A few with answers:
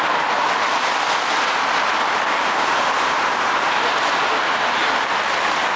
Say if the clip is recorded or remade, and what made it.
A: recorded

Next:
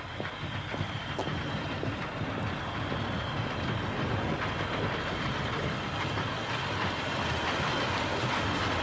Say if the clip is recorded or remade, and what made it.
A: recorded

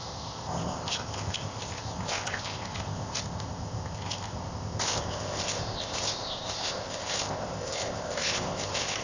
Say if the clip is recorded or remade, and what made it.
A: remade, codec, ZipCodec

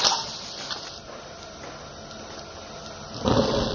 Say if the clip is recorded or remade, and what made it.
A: recorded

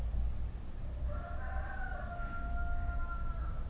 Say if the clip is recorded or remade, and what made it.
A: recorded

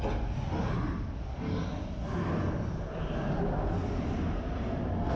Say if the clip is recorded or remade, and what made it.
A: recorded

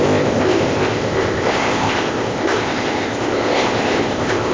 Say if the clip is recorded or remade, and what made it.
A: remade, codec, ZipCodec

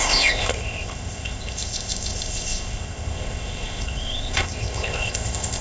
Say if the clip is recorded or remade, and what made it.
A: remade, codec, ZipCodec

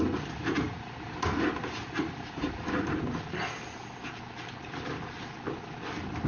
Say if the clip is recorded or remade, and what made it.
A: recorded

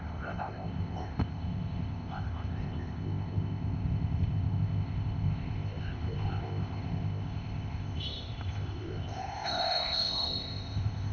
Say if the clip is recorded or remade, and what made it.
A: remade, codec, ZipCodec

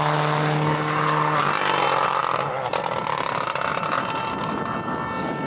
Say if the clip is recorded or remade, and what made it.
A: recorded